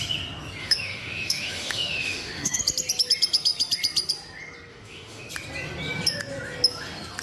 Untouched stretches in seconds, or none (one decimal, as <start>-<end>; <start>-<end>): 0.0-0.6; 2.6-4.7; 5.3-7.2